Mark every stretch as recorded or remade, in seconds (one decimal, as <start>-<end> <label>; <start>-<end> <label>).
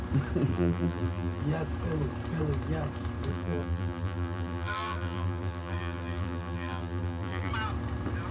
0.0-0.5 recorded; 0.5-1.4 remade; 1.4-3.3 recorded; 3.3-7.5 remade; 7.5-8.3 recorded